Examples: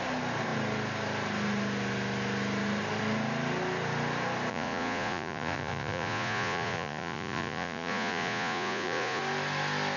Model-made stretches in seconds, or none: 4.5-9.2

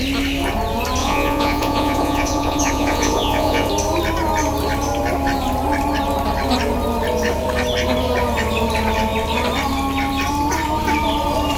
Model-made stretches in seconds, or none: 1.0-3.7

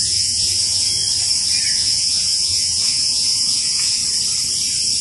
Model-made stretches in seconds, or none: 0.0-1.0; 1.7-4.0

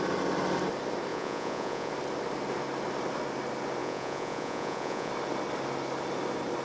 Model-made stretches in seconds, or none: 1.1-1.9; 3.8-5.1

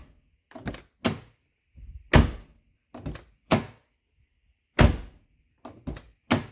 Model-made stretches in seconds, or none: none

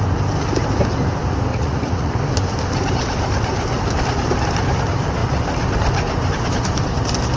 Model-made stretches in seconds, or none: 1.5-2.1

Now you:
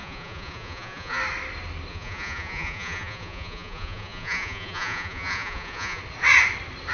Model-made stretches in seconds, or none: 0.0-1.2; 1.9-6.0

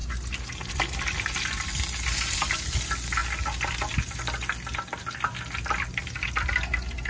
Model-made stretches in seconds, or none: none